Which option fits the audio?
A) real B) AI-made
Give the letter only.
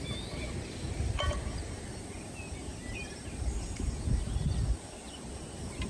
A